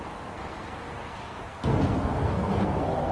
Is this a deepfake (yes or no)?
yes